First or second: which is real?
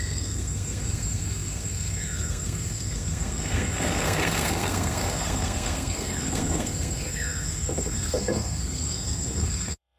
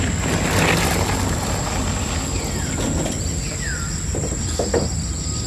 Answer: second